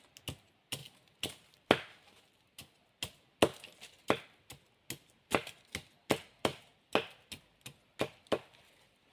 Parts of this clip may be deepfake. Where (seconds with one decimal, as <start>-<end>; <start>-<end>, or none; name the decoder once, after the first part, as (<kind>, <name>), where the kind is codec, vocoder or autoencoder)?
none